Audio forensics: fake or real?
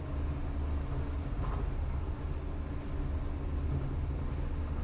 real